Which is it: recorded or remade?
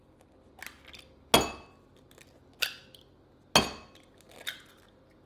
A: recorded